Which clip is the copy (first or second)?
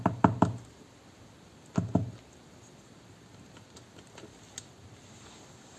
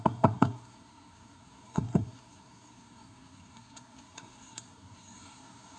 second